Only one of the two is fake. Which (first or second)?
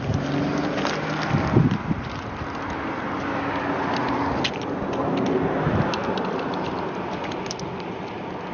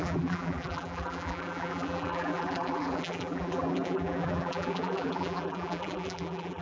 second